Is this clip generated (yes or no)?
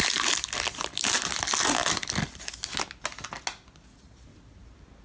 no